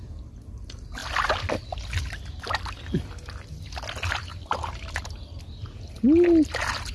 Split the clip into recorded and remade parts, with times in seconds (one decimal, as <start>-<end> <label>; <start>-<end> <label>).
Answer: 0.0-4.3 recorded; 4.3-5.4 remade; 5.4-6.9 recorded